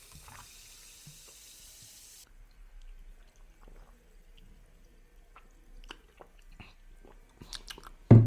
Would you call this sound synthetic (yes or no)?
no